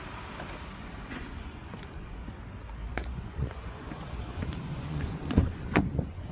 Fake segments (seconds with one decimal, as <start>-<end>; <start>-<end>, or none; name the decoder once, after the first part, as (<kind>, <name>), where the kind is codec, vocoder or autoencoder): 0.8-2.4 (vocoder, Vocos); 2.8-6.3